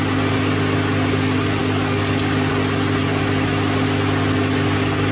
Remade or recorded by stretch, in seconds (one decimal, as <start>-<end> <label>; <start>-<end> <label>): 0.0-1.6 recorded; 1.6-2.5 remade; 2.5-5.1 recorded